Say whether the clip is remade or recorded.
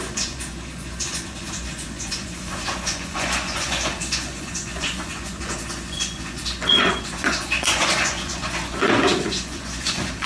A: remade